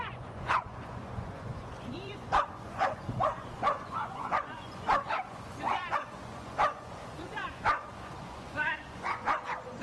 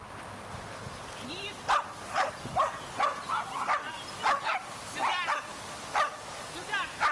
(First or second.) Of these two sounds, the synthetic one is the first